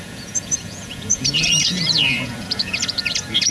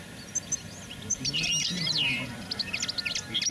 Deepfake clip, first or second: first